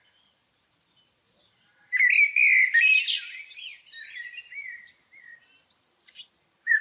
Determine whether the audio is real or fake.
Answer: fake